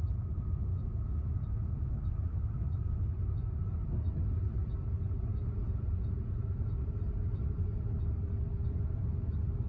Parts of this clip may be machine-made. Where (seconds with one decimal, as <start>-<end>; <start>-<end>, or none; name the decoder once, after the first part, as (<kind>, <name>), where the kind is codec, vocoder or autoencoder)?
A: 0.7-1.9 (vocoder, Vocos); 5.3-6.9